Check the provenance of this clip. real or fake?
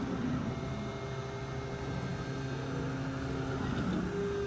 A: real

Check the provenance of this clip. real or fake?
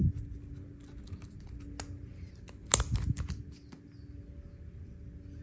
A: real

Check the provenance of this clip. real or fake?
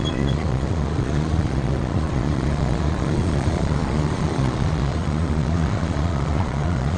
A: fake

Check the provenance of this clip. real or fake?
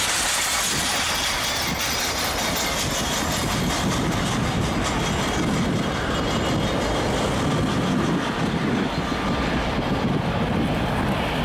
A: real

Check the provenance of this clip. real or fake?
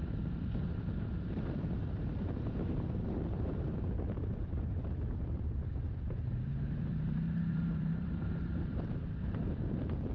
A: fake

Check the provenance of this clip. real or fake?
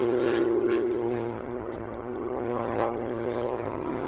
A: fake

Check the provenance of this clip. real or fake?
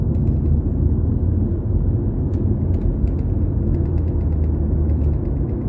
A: real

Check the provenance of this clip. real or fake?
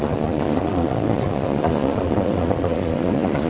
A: fake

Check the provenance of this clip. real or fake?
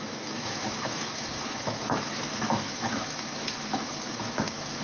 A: fake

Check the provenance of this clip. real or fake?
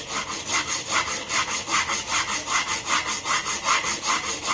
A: real